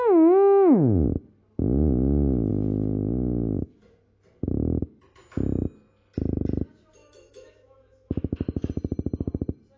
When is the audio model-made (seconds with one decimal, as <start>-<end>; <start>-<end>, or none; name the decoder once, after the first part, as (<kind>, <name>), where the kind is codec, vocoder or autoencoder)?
7.0-8.7 (autoencoder, DAC-VAE)